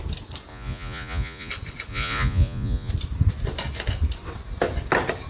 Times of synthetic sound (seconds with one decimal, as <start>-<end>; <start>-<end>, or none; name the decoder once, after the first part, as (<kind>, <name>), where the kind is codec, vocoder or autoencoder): 0.5-1.5 (vocoder, Vocos); 1.9-2.9